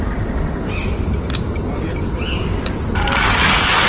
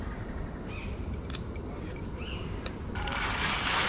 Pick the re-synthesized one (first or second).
second